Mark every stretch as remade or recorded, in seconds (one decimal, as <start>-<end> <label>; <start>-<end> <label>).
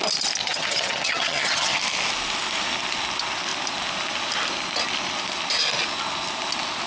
0.0-0.4 recorded; 0.4-1.8 remade; 1.8-6.9 recorded